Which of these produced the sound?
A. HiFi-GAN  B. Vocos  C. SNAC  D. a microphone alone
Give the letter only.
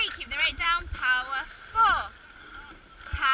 D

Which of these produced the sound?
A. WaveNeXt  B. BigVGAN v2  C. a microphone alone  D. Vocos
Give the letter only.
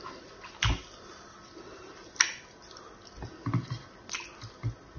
C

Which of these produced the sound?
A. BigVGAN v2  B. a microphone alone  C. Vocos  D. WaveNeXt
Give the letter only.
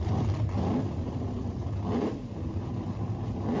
B